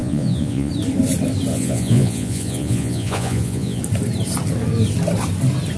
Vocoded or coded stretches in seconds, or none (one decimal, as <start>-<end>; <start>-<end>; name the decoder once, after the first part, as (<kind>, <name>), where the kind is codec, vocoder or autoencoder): 0.0-0.7 (vocoder, Vocos); 1.5-3.8